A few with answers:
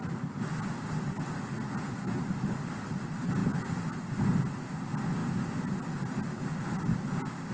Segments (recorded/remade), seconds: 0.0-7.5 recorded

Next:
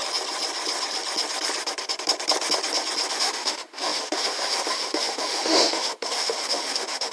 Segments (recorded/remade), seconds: 0.0-3.1 recorded; 3.1-7.1 remade

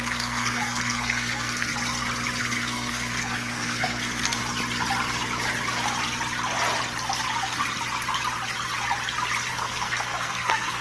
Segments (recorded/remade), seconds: 0.0-1.7 remade; 1.7-2.4 recorded; 2.4-4.4 remade; 4.4-9.5 recorded; 9.5-10.8 remade

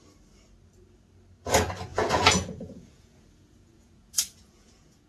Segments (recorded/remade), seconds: 0.0-1.9 recorded; 1.9-5.1 remade